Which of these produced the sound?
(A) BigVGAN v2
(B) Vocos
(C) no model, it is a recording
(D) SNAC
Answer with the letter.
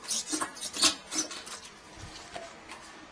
C